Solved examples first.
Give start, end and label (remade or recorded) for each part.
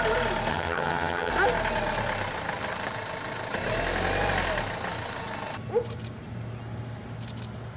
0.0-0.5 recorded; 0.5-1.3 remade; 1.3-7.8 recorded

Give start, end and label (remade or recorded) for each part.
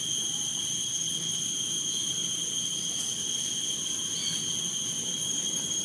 0.0-0.8 recorded; 0.8-1.4 remade; 1.4-5.8 recorded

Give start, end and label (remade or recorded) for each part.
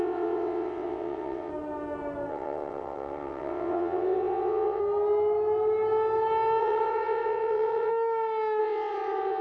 0.0-1.5 remade; 1.5-2.3 recorded; 2.3-4.8 remade; 4.8-6.6 recorded; 6.6-7.9 remade; 7.9-8.6 recorded; 8.6-9.4 remade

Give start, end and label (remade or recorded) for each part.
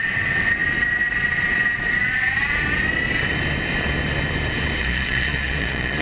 0.0-4.8 recorded; 4.8-6.0 remade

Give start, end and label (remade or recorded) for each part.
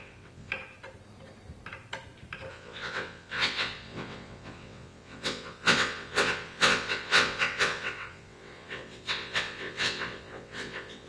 0.0-0.5 remade; 0.5-2.5 recorded; 2.5-11.1 remade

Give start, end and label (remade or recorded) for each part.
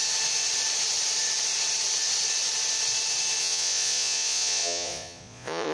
0.0-3.4 recorded; 3.4-5.7 remade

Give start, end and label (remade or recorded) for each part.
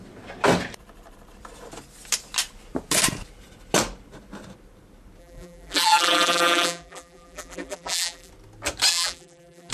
0.0-5.2 recorded; 5.2-8.3 remade; 8.3-8.9 recorded; 8.9-9.7 remade